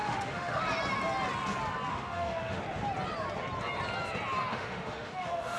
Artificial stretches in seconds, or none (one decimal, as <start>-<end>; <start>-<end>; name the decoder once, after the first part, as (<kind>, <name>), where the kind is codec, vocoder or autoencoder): 0.0-0.6 (autoencoder, DAC-VAE); 1.9-2.6; 4.5-5.6